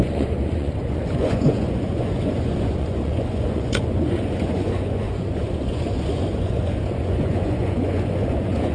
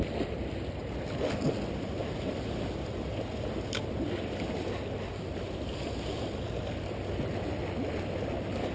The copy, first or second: first